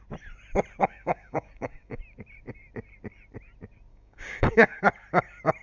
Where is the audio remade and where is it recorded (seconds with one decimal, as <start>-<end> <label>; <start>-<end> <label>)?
0.0-0.8 recorded; 0.8-2.0 remade; 2.0-3.9 recorded; 3.9-4.8 remade; 4.8-5.6 recorded